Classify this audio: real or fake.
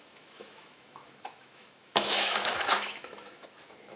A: fake